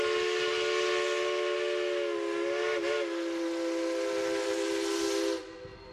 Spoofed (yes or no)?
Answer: no